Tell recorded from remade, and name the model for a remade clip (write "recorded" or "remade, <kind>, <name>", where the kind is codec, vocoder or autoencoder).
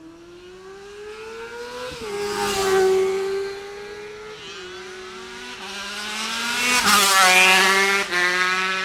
recorded